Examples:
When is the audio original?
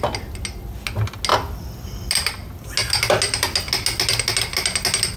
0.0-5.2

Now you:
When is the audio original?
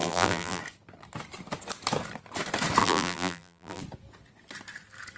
0.6-2.8; 3.8-5.2